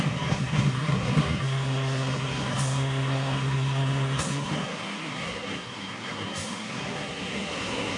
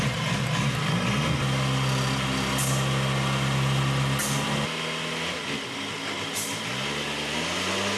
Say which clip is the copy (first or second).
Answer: first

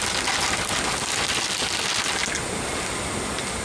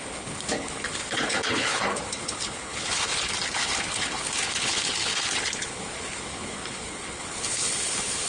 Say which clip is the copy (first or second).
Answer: second